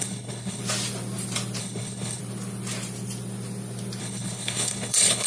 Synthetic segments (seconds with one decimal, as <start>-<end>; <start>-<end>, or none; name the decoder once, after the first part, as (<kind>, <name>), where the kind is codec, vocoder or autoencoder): 0.0-0.6 (codec, HILCodec); 1.6-2.2; 4.0-5.3